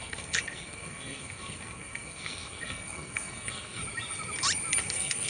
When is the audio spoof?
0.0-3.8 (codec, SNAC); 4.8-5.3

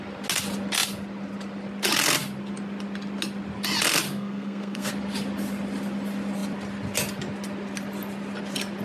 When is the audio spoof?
4.1-4.9 (codec, SNAC)